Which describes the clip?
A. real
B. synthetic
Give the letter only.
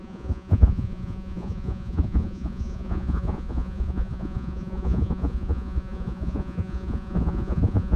B